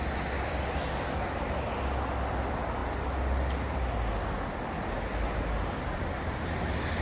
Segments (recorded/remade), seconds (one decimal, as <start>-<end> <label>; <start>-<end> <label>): 0.0-7.0 recorded